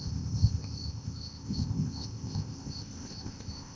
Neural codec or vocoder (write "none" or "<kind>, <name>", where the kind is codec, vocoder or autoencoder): codec, ZipCodec